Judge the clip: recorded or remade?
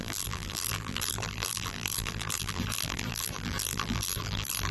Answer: remade